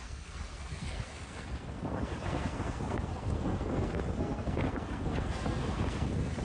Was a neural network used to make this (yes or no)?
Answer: yes